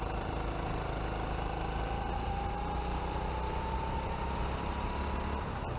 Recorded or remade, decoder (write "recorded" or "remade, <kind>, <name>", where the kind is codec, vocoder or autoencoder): recorded